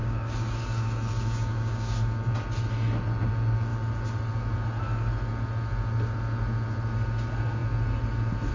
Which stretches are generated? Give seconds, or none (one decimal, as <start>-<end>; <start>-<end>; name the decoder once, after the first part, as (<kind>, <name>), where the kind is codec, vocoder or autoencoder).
0.0-2.0 (codec, DAC)